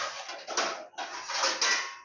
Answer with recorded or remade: recorded